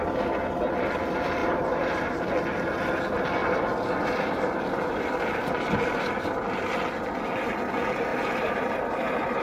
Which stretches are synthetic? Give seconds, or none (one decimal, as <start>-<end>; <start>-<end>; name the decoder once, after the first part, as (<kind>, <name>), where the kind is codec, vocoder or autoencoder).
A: 1.4-2.1 (vocoder, BigVGAN v2); 3.4-5.0; 8.1-8.8